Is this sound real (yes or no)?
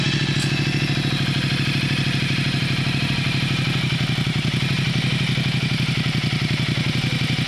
yes